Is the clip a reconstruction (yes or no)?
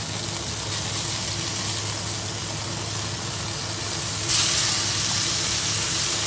no